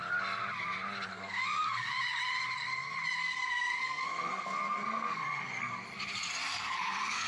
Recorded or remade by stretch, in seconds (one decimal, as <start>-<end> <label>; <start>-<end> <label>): 0.0-1.1 recorded; 1.1-1.9 remade; 1.9-3.2 recorded; 3.2-5.7 remade; 5.7-6.5 recorded; 6.5-7.3 remade